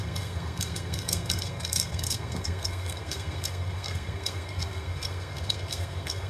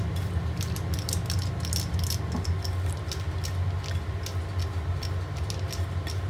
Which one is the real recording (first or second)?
second